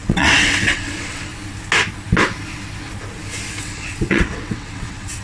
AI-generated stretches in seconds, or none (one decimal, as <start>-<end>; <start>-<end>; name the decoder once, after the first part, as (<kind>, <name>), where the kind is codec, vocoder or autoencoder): 0.0-1.3 (vocoder, WaveNeXt); 3.6-5.2